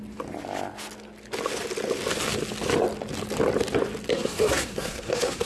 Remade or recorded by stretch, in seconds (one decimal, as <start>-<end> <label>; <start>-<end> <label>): 0.0-4.1 recorded; 4.1-5.5 remade